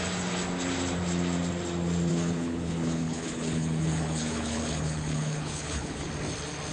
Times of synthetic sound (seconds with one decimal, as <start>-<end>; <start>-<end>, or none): 2.1-6.1